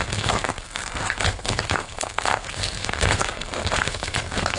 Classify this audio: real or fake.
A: fake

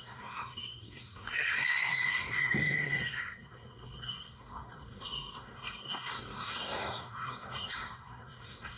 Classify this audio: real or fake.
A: fake